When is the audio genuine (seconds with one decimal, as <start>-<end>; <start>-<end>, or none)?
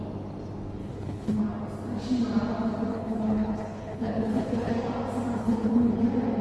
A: 0.0-0.8; 1.4-2.9; 4.7-5.4; 6.0-6.4